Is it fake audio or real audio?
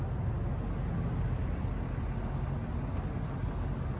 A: real